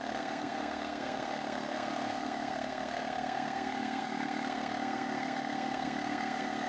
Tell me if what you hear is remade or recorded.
remade